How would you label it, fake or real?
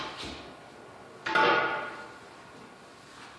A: real